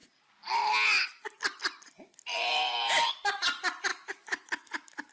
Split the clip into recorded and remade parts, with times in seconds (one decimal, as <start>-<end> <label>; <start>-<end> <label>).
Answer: 0.0-3.9 recorded; 3.9-5.1 remade